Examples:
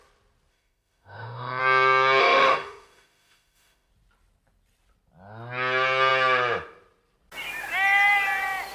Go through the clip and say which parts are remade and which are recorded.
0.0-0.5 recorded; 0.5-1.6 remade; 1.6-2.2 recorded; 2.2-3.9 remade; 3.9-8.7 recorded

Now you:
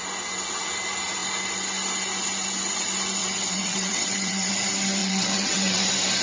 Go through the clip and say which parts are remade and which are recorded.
0.0-3.2 recorded; 3.2-4.5 remade; 4.5-5.0 recorded; 5.0-5.8 remade; 5.8-6.2 recorded

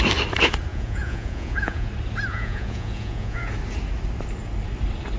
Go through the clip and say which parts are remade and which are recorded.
0.0-0.7 recorded; 0.7-1.9 remade; 1.9-2.3 recorded; 2.3-3.5 remade; 3.5-5.2 recorded